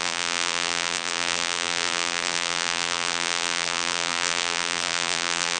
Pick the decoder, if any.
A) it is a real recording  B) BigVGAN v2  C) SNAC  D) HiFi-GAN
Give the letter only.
B